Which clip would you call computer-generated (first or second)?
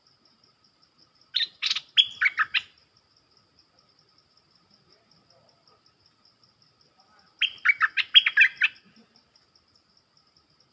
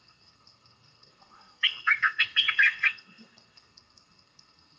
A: second